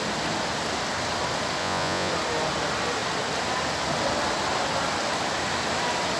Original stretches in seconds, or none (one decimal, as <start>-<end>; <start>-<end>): 0.0-1.6; 2.1-6.2